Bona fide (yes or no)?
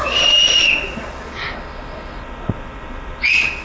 no